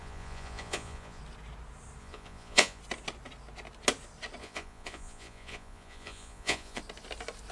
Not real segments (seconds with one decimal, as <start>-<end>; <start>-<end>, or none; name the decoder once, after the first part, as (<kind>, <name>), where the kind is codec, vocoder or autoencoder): 0.0-1.2 (vocoder, Vocos); 2.0-2.8; 4.4-6.8